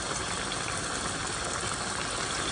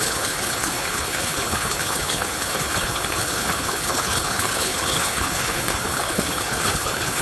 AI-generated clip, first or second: second